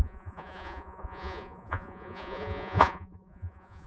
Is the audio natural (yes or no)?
no